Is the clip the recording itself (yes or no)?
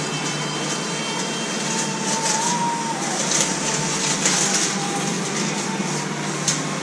yes